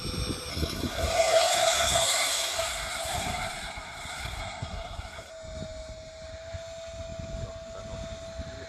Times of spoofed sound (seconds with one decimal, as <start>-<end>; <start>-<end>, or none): 0.5-5.3